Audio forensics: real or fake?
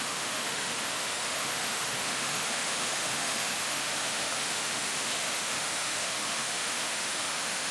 fake